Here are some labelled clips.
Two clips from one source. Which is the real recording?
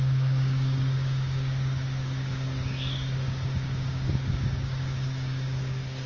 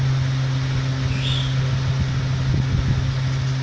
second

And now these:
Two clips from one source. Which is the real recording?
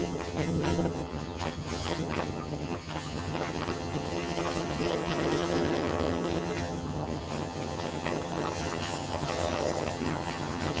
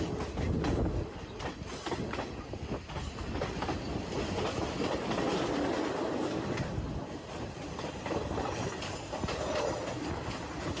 second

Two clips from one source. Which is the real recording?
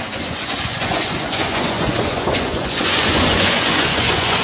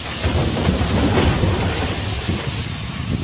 second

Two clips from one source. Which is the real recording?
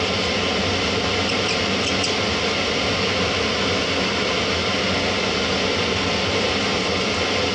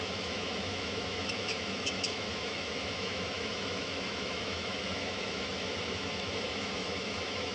first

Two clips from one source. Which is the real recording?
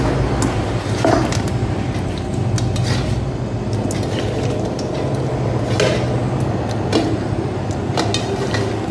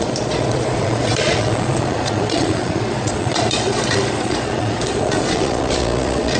first